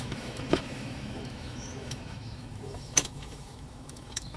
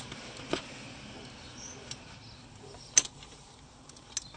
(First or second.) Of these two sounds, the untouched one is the second